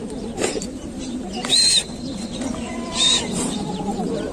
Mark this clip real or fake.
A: fake